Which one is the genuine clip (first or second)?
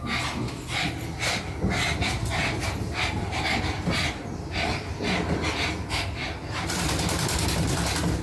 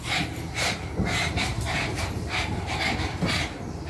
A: first